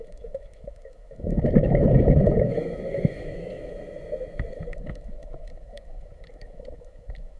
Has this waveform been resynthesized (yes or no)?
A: yes